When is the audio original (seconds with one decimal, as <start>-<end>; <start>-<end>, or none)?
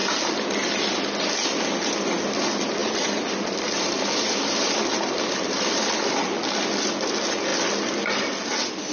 0.0-2.8; 7.0-8.9